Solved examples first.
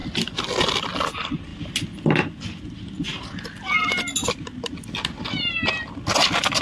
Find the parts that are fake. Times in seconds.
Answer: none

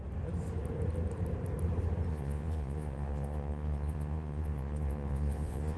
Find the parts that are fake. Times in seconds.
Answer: 2.1-5.8 (vocoder, Vocos)

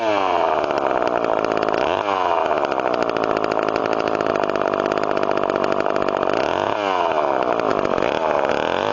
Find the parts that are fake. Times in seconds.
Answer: 3.8-4.3 (autoencoder, DAC-VAE)

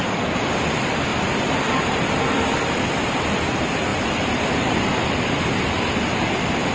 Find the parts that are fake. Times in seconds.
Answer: 1.1-3.1 (vocoder, BigVGAN v2); 3.9-4.5

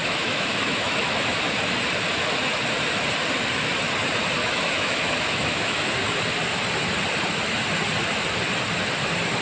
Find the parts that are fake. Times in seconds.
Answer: 0.0-1.3 (autoencoder, DAC-VAE); 4.4-5.9

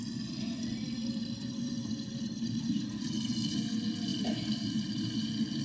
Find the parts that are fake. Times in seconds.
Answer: 1.0-2.7 (vocoder, BigVGAN v2); 4.1-4.9

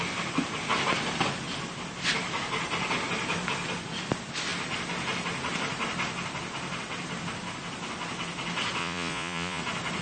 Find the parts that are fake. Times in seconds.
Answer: 8.8-9.6 (vocoder, Vocos)